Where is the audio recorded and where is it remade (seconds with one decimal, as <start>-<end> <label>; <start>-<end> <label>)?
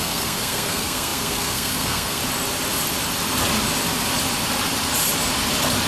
0.0-2.2 remade; 2.2-5.9 recorded